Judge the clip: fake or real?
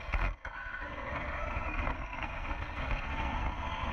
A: fake